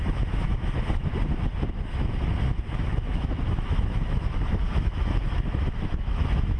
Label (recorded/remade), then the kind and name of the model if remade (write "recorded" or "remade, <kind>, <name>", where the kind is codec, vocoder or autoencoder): remade, autoencoder, DAC-VAE